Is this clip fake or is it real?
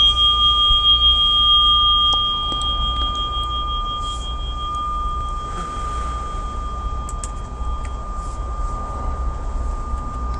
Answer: real